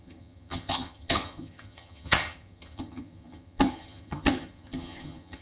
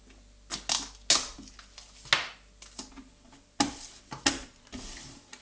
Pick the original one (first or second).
second